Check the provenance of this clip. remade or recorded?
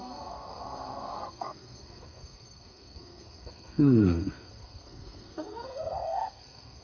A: remade